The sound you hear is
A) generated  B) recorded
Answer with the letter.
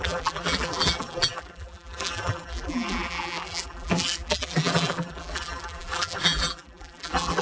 A